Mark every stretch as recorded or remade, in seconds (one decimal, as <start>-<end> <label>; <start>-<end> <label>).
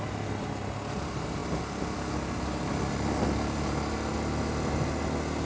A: 0.0-5.5 recorded